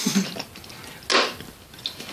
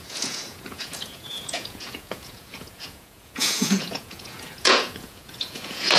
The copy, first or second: second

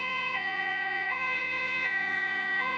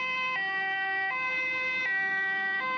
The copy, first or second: first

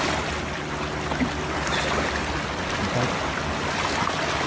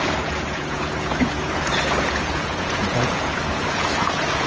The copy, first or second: second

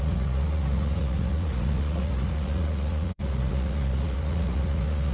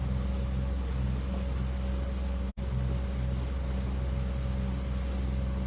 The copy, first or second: first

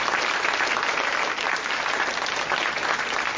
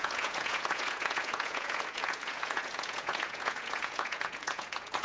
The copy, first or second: second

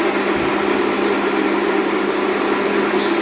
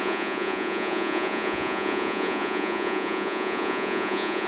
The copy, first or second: second